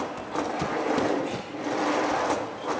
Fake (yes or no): no